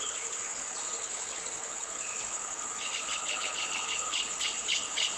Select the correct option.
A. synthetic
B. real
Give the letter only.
A